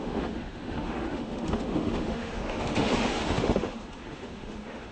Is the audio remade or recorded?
remade